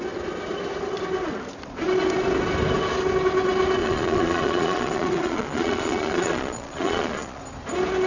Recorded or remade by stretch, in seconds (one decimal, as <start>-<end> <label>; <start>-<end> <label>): 0.0-3.8 recorded; 3.8-7.4 remade; 7.4-8.1 recorded